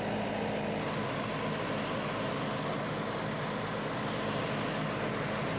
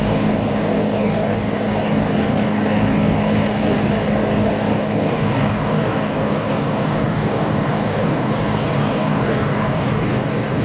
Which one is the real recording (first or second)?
first